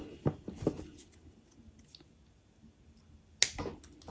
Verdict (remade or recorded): recorded